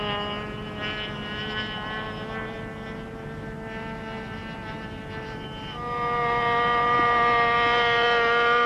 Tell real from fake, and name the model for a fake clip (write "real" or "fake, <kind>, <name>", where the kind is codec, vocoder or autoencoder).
real